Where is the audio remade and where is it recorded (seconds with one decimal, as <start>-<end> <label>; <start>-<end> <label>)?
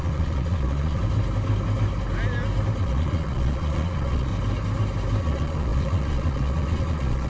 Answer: 0.0-1.0 remade; 1.0-2.8 recorded; 2.8-4.3 remade; 4.3-5.2 recorded; 5.2-7.3 remade